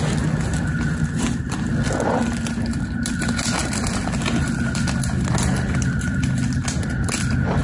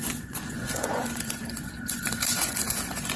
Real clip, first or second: first